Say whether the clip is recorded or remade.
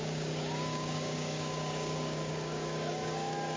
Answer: remade